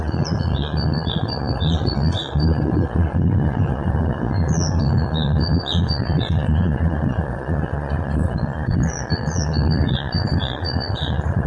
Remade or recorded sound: remade